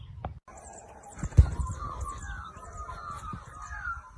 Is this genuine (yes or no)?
yes